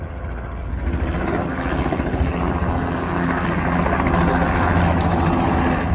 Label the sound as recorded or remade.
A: recorded